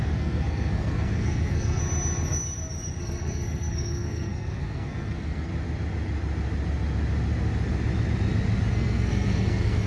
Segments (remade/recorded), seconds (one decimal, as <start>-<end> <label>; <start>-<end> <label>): 0.0-1.8 remade; 1.8-3.0 recorded; 3.0-5.5 remade; 5.5-8.7 recorded; 8.7-9.9 remade